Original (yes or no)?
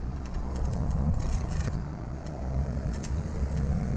no